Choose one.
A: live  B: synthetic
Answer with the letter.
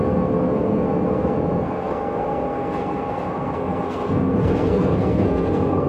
B